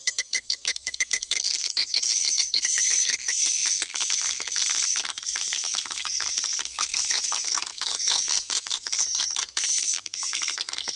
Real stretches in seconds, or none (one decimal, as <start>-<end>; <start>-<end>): none